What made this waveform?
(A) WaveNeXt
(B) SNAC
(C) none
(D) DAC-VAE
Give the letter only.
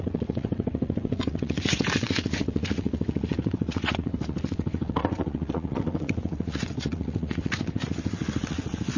A